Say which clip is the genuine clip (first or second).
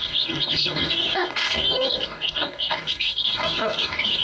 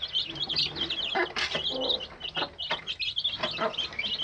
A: second